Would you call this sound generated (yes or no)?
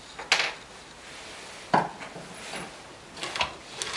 no